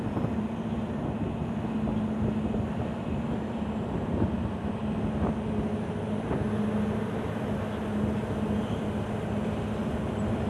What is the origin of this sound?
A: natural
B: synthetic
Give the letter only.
A